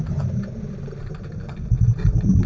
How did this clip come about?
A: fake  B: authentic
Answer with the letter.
B